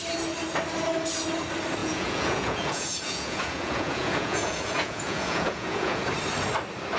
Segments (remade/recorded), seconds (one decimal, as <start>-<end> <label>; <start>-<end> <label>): 0.0-1.8 recorded; 1.8-6.0 remade; 6.0-7.0 recorded